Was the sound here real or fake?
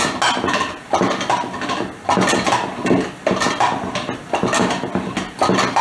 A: real